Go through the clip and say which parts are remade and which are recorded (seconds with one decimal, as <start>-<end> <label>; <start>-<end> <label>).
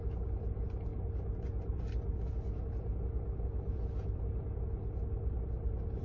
0.0-6.0 recorded